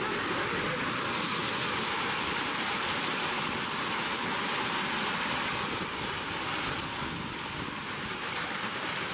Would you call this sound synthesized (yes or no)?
no